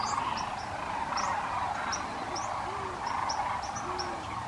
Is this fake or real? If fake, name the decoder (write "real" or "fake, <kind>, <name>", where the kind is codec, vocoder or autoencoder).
real